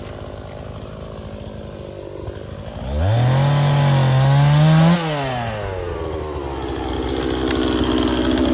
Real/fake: real